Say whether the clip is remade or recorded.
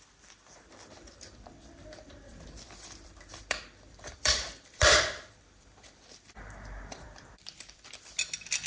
remade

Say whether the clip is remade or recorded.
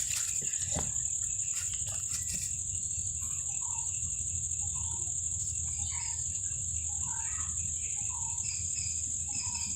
recorded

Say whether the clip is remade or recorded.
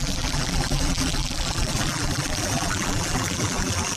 remade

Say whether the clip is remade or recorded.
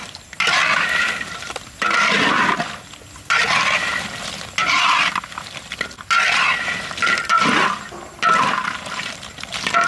recorded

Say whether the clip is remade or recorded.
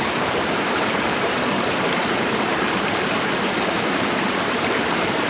remade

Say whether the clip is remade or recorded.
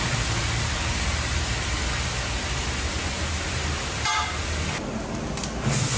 recorded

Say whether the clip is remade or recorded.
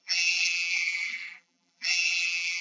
remade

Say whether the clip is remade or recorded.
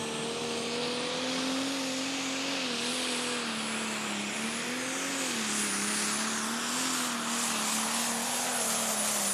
recorded